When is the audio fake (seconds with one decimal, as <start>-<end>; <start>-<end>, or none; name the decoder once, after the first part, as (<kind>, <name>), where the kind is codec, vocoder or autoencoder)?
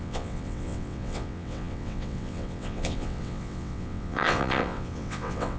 0.0-5.6 (vocoder, WaveNeXt)